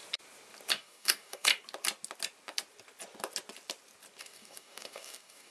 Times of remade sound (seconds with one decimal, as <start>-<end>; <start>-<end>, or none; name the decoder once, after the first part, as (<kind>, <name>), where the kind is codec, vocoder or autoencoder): 0.7-1.5 (codec, DAC); 4.2-5.5